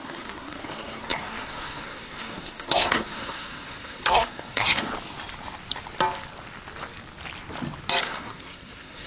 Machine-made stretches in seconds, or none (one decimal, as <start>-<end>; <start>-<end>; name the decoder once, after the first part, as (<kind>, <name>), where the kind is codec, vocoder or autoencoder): 0.0-4.9 (codec, SNAC); 8.0-9.1